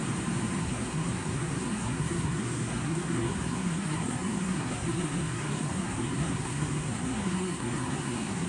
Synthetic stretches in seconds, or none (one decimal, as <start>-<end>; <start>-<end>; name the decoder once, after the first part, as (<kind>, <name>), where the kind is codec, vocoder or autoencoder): 0.6-8.5 (codec, SNAC)